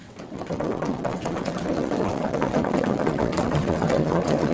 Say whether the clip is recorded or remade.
remade